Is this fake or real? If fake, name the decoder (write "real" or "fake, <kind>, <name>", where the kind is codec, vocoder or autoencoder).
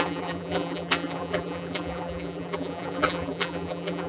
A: fake, vocoder, BigVGAN v2